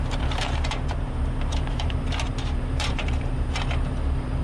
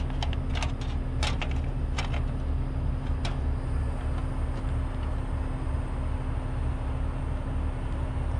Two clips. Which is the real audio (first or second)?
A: second